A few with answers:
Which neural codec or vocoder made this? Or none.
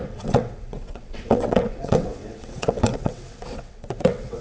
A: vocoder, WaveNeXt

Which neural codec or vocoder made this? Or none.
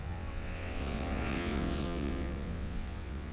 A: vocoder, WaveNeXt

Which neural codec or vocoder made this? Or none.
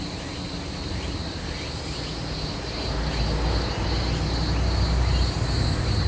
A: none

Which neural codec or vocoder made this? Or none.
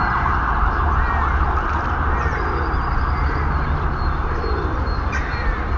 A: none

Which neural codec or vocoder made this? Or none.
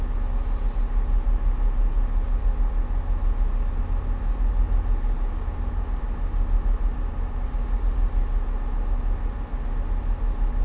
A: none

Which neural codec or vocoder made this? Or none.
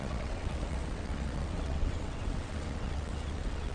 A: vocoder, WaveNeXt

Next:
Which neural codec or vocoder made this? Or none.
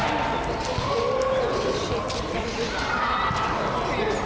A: none